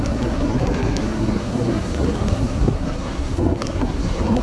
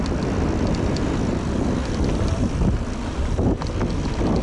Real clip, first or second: second